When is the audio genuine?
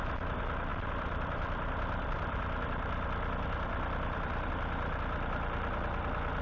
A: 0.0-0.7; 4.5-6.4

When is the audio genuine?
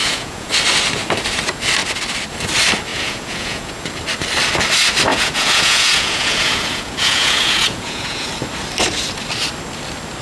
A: 0.5-2.9; 3.7-5.1; 8.3-10.2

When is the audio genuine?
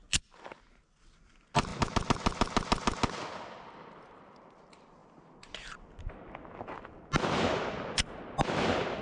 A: 0.0-9.0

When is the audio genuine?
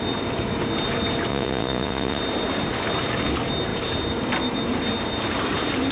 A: 0.0-1.3; 2.2-5.9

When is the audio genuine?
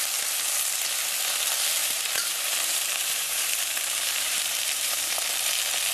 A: 0.0-1.8; 5.3-5.9